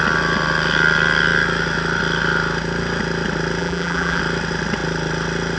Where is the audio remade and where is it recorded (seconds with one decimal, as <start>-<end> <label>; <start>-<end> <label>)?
0.0-3.6 recorded; 3.6-4.2 remade; 4.2-5.6 recorded